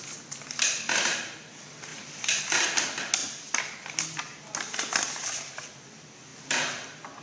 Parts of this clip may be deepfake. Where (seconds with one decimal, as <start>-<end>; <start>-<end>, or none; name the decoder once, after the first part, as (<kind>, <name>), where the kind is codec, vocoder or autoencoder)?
none